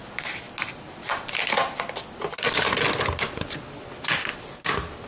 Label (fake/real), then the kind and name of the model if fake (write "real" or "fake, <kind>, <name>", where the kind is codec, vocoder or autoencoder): real